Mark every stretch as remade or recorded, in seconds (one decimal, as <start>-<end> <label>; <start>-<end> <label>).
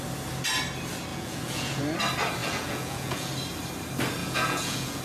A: 0.0-1.1 recorded; 1.1-1.8 remade; 1.8-2.4 recorded; 2.4-3.3 remade; 3.3-4.2 recorded; 4.2-5.0 remade